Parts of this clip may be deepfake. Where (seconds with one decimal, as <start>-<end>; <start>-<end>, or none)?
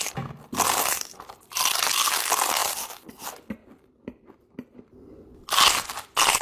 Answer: none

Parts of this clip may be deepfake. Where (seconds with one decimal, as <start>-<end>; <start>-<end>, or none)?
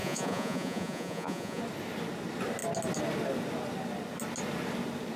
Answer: 0.0-1.6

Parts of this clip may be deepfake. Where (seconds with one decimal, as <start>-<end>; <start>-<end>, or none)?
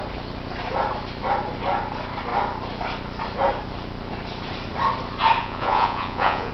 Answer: 5.4-6.5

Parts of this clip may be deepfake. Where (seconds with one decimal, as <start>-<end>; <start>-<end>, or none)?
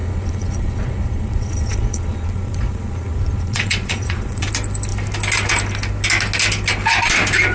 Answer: 0.0-4.5